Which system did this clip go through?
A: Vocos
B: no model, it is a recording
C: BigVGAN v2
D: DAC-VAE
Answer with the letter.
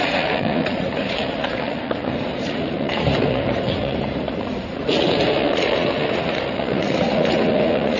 A